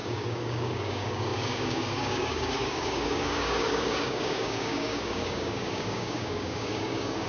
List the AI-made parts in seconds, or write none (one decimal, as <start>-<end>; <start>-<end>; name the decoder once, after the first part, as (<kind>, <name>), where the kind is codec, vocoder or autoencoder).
0.0-7.3 (codec, DAC)

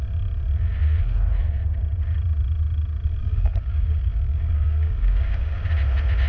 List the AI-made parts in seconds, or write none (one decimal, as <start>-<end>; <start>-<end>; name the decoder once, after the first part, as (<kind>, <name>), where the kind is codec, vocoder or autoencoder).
3.2-5.6 (codec, DAC)

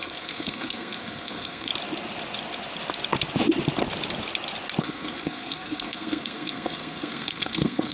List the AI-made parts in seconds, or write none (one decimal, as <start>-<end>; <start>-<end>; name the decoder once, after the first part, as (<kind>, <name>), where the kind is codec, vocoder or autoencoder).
0.0-1.7 (codec, SNAC); 4.8-7.9

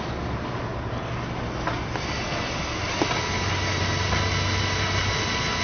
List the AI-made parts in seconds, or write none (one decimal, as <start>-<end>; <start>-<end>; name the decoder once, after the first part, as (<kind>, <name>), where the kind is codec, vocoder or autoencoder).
none

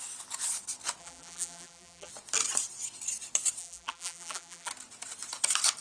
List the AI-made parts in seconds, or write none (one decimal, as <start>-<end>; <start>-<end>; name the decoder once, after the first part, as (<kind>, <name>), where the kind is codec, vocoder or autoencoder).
1.0-2.1 (vocoder, BigVGAN v2); 3.6-4.7

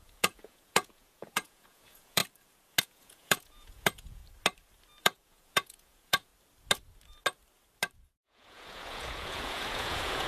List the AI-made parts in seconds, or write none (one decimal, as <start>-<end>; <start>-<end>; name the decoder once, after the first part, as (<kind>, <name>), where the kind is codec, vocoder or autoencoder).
0.0-2.2 (vocoder, Vocos); 2.8-4.2; 5.0-6.3; 8.2-10.3